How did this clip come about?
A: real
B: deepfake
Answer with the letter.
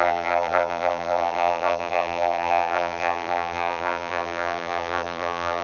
B